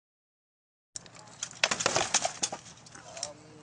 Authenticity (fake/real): real